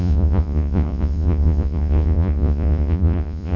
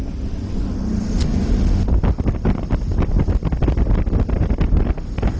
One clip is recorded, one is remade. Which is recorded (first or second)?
second